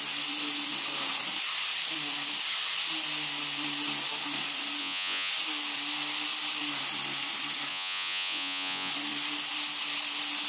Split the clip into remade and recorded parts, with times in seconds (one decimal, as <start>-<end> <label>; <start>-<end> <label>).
0.0-4.8 recorded; 4.8-5.3 remade; 5.3-7.7 recorded; 7.7-8.9 remade; 8.9-10.5 recorded